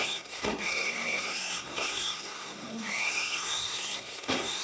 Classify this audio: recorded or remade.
remade